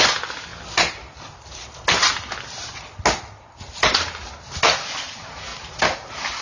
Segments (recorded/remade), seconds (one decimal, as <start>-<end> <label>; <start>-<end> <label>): 0.0-6.4 recorded

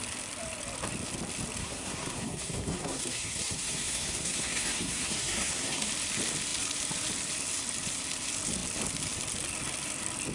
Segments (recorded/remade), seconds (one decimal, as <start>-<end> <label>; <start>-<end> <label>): 0.0-1.6 recorded; 1.6-5.9 remade; 5.9-10.3 recorded

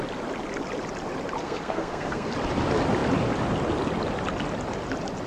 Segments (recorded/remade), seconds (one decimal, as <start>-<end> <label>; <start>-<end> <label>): 0.0-1.4 recorded; 1.4-2.3 remade; 2.3-5.3 recorded